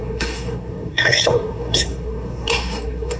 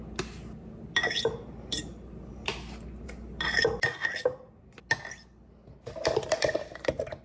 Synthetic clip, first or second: first